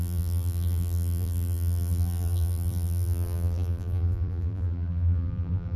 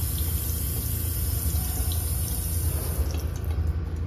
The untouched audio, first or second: second